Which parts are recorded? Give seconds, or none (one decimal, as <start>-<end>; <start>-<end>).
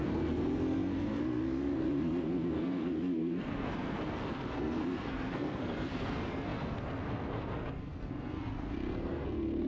none